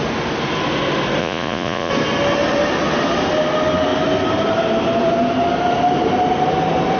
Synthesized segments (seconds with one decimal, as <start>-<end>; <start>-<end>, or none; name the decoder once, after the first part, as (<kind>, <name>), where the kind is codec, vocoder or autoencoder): 1.2-1.9 (vocoder, Vocos)